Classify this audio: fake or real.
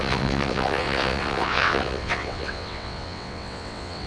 fake